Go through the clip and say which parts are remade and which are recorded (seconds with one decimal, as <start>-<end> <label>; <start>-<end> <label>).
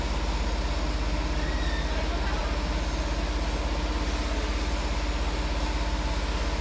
0.0-6.6 recorded